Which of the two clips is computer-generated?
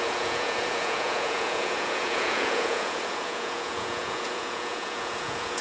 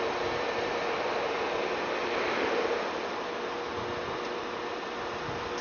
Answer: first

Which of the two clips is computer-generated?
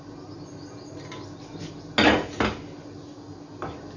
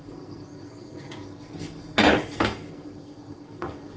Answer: second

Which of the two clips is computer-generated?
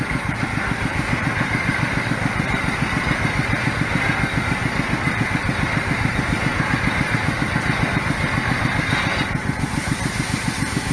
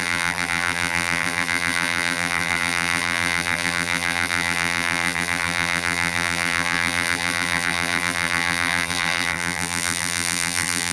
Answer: second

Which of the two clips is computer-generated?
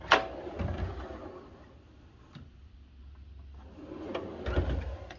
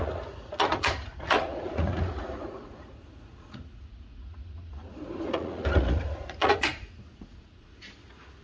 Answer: second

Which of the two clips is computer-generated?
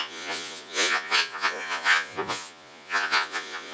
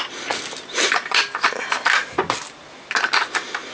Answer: first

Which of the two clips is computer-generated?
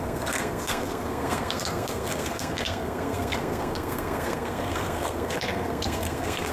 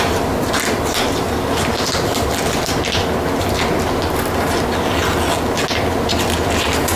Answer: first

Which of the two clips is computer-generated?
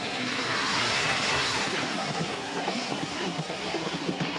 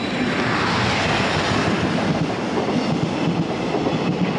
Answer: first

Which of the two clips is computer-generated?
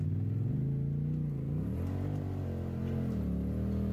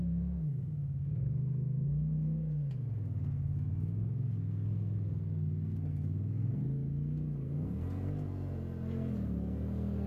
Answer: second